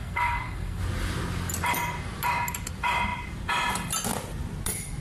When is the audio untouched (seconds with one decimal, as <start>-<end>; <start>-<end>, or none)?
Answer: 0.8-5.0